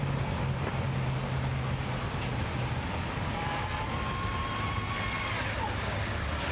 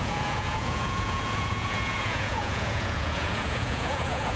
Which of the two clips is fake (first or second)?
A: second